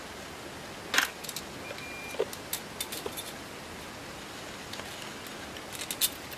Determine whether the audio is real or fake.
real